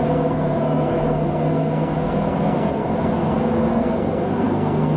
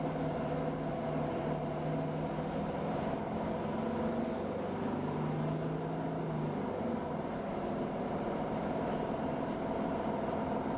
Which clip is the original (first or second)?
second